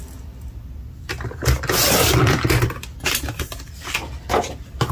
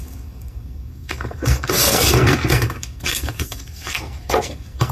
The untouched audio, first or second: first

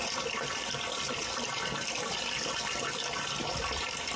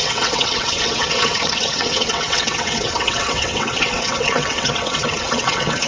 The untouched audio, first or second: first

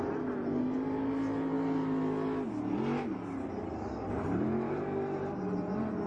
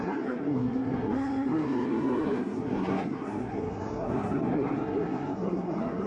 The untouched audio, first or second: first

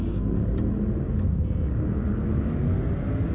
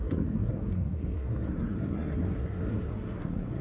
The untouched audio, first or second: first